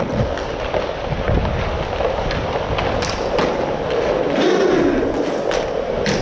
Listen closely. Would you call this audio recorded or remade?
recorded